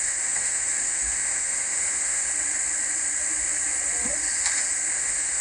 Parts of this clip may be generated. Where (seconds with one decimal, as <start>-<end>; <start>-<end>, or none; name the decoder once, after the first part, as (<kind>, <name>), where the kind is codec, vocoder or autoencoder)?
0.0-2.3 (autoencoder, DAC-VAE); 4.9-5.4